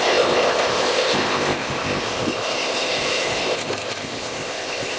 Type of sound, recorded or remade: remade